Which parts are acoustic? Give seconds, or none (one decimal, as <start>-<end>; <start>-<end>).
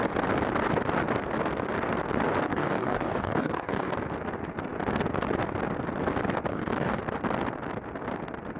0.0-2.5; 3.9-6.5; 7.0-8.6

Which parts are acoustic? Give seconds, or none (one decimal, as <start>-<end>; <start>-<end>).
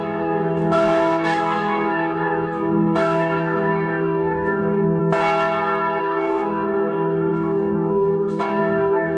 5.0-6.0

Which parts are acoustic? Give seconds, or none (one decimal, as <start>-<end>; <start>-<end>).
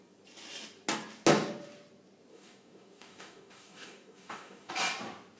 0.0-2.3; 4.7-5.4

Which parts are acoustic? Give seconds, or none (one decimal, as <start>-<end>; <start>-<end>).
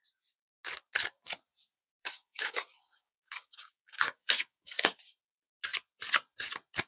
0.0-2.0; 5.0-6.9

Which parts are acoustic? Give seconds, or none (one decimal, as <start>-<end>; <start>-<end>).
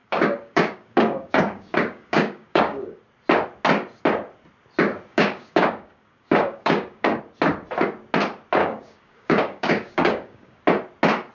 3.0-5.1; 7.2-8.6; 10.6-11.3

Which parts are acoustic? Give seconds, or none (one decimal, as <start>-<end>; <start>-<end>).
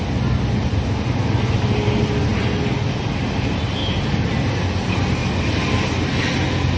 0.0-6.8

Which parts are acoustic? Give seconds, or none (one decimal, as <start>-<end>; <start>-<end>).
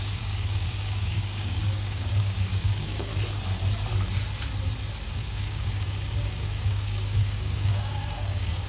3.1-5.1